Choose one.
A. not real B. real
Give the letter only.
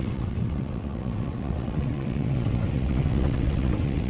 A